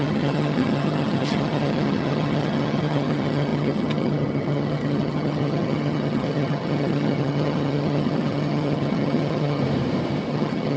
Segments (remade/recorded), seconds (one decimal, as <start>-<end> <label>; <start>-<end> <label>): 0.0-9.6 remade; 9.6-10.3 recorded; 10.3-10.8 remade